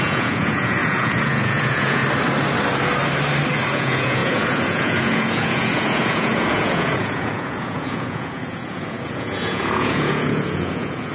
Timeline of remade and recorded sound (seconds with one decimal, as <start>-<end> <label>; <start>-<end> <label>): 0.0-2.0 remade; 2.0-3.7 recorded; 3.7-11.1 remade